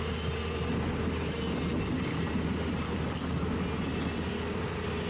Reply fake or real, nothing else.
real